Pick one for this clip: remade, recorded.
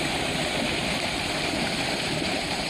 recorded